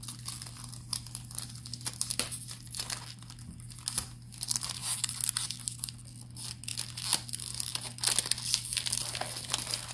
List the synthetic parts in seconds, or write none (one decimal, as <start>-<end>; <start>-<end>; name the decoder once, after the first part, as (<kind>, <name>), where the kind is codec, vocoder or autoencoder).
none